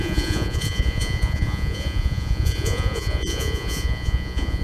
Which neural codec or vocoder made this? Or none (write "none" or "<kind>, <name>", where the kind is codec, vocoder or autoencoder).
vocoder, Vocos